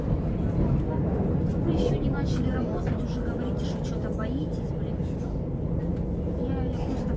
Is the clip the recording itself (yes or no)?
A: yes